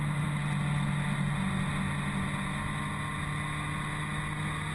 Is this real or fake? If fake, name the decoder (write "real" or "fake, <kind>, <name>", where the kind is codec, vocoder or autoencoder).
real